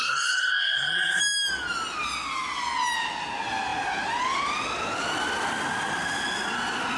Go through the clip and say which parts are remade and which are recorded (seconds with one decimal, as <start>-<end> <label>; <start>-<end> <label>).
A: 0.0-1.2 remade; 1.2-7.0 recorded